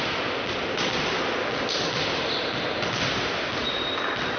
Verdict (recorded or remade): recorded